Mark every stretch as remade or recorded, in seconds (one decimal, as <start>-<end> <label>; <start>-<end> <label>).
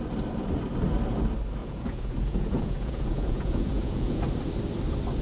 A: 0.0-1.6 recorded; 1.6-4.2 remade; 4.2-5.2 recorded